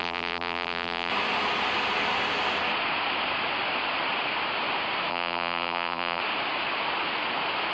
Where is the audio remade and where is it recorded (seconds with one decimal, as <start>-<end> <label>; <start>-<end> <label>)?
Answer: 0.0-1.1 remade; 1.1-5.1 recorded; 5.1-6.2 remade; 6.2-7.7 recorded